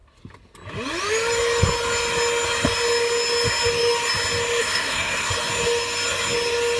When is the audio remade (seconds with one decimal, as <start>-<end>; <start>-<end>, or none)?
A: 4.6-5.3